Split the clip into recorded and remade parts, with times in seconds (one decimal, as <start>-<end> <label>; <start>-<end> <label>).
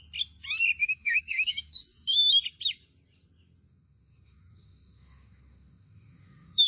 0.0-0.8 recorded; 0.8-2.2 remade; 2.2-3.7 recorded; 3.7-6.7 remade